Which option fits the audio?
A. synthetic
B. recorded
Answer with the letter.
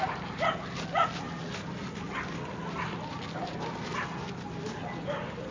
B